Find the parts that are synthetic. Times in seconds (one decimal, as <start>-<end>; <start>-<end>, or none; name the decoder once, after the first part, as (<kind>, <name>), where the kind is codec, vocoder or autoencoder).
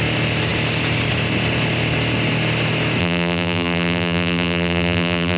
3.0-5.4 (vocoder, BigVGAN v2)